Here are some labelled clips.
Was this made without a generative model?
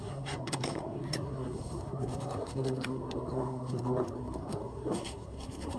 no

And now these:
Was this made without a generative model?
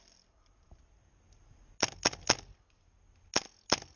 yes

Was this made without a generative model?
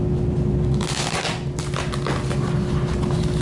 yes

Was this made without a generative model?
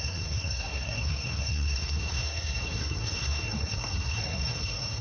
no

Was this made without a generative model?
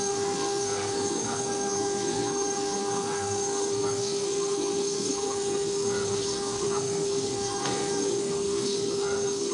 no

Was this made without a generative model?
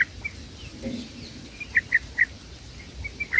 yes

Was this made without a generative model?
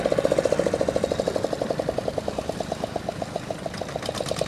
yes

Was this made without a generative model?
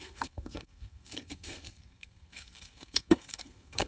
no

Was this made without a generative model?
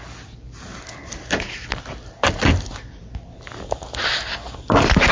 yes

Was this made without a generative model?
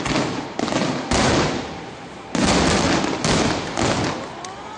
yes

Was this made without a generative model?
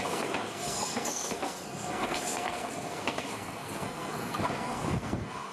no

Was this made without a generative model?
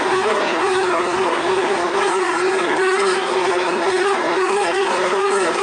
no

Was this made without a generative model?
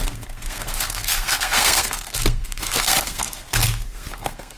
no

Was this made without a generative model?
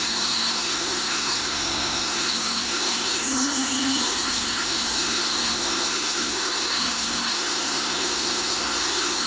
no